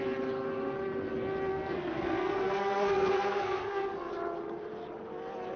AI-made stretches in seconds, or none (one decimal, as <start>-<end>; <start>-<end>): 1.5-4.1